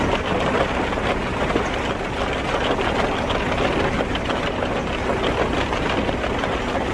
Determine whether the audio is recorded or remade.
recorded